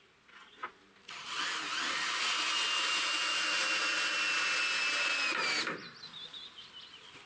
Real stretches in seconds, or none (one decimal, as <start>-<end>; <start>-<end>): 0.0-7.3